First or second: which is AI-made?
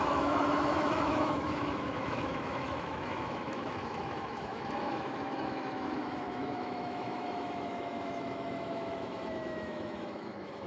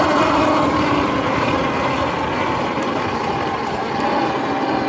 first